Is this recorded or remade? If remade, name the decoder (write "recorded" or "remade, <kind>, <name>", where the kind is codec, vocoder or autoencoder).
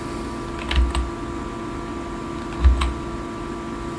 recorded